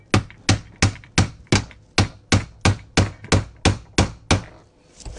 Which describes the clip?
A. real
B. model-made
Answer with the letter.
A